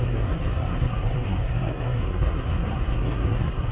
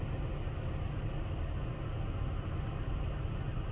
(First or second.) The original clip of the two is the second